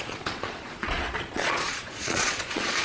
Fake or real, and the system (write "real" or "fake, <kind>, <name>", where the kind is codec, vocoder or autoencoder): fake, vocoder, Vocos